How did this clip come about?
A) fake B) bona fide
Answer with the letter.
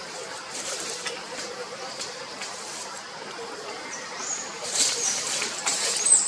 A